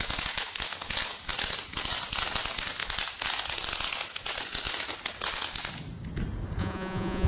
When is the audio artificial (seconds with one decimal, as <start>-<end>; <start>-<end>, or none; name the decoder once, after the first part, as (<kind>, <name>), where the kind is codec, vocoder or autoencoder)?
6.6-7.3 (vocoder, Vocos)